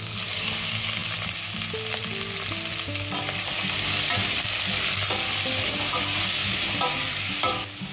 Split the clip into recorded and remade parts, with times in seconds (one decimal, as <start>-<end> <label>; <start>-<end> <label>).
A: 0.0-7.9 recorded